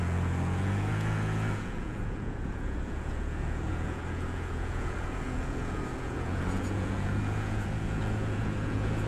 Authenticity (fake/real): fake